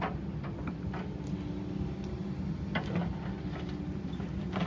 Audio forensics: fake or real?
real